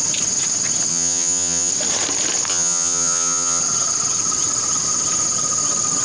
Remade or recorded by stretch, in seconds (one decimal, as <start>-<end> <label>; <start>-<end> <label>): 0.0-0.9 recorded; 0.9-1.7 remade; 1.7-2.5 recorded; 2.5-3.6 remade; 3.6-6.0 recorded